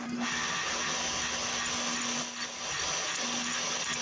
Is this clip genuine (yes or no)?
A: yes